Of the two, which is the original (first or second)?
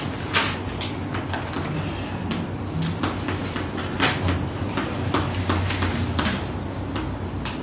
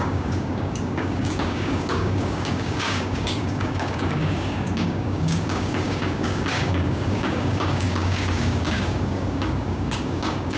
first